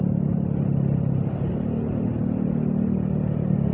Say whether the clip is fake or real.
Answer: real